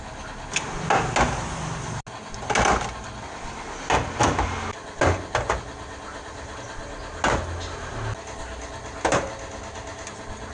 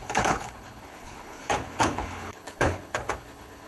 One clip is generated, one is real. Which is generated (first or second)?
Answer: second